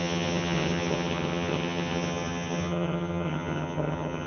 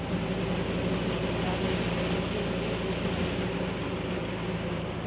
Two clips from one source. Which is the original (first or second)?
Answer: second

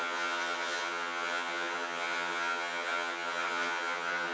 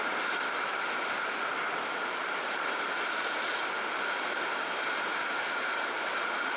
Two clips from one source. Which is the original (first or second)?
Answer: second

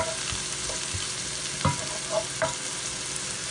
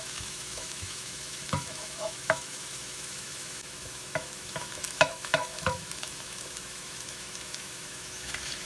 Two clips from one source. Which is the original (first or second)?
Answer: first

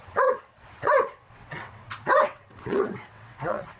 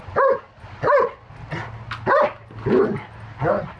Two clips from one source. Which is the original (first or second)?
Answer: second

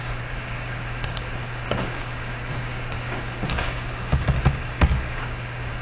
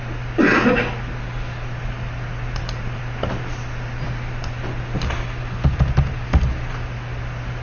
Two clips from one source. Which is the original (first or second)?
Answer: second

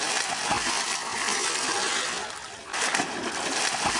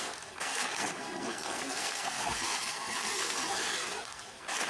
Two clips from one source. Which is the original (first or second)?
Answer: first